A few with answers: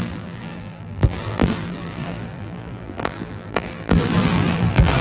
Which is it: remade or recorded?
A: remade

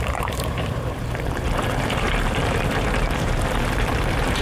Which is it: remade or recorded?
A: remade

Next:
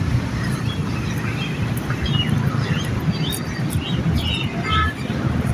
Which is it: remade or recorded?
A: remade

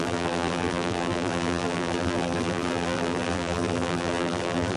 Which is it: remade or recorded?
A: remade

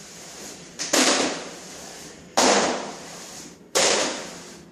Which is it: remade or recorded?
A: remade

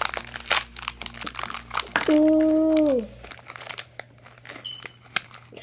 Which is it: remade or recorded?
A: recorded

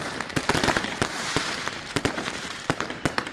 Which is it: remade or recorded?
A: remade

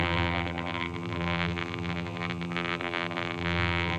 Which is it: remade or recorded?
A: remade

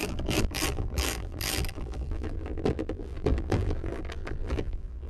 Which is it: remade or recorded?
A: remade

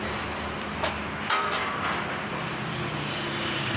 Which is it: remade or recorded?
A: recorded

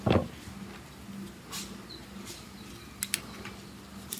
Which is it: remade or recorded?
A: recorded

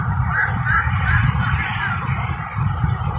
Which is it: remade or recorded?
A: remade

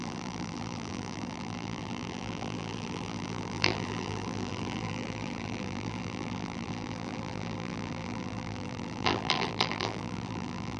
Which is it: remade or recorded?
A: remade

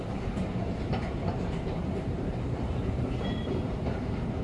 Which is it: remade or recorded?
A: remade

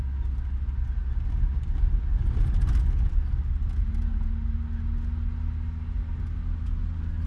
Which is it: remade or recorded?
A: recorded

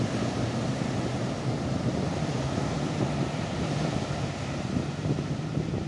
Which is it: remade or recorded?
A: recorded